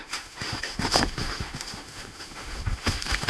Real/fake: fake